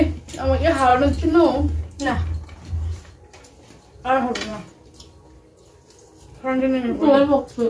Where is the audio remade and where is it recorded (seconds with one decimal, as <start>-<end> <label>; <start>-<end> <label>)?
0.0-0.9 recorded; 0.9-3.1 remade; 3.1-7.7 recorded